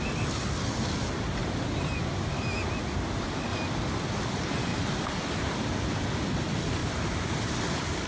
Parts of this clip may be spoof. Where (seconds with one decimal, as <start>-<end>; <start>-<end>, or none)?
1.4-2.1; 4.7-6.0; 6.8-7.6